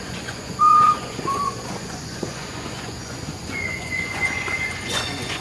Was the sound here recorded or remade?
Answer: remade